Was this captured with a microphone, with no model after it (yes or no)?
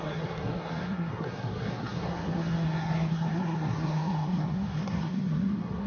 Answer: no